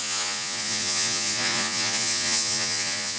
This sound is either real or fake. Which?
fake